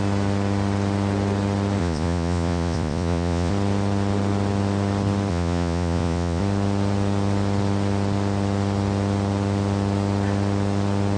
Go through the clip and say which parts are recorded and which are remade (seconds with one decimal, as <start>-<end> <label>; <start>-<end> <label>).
0.0-1.8 recorded; 1.8-3.5 remade; 3.5-5.3 recorded; 5.3-6.4 remade; 6.4-11.2 recorded